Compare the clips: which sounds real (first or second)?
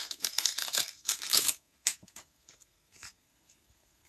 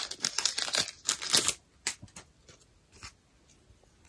second